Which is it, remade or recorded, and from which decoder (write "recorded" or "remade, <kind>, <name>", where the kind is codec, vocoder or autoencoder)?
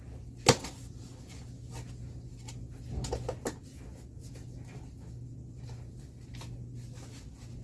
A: recorded